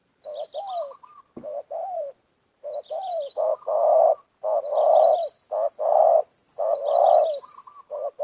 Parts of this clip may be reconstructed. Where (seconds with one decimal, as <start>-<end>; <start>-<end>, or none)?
1.1-3.5